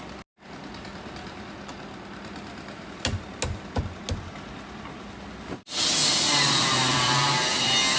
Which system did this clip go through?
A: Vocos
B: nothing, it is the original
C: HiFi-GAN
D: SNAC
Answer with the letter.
B